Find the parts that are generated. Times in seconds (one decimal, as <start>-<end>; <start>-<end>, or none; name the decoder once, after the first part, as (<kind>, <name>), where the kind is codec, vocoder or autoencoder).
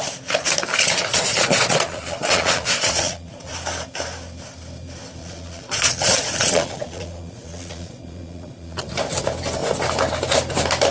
1.1-3.5 (vocoder, Vocos); 5.2-8.9